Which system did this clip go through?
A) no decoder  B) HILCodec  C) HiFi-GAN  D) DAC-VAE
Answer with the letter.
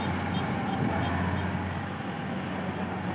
A